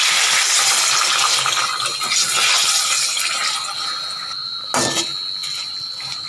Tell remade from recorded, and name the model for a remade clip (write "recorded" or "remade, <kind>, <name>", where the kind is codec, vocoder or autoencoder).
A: recorded